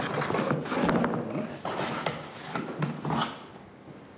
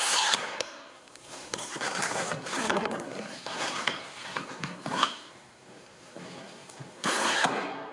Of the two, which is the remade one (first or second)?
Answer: second